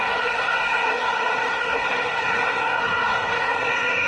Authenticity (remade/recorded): remade